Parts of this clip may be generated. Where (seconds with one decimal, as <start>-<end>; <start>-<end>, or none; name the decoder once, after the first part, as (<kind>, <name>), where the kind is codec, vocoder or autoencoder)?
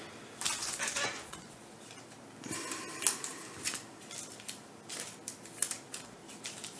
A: 0.6-1.7 (vocoder, Vocos)